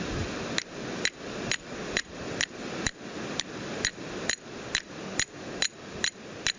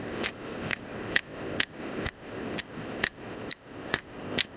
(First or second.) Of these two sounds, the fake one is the second